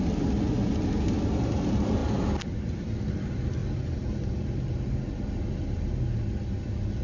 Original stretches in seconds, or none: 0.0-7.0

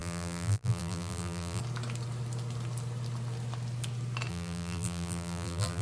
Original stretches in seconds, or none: 1.6-4.3

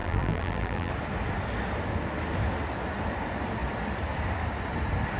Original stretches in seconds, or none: 0.9-5.2

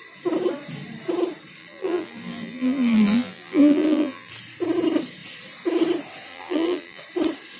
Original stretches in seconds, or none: 0.0-1.6; 4.3-6.3; 7.0-7.6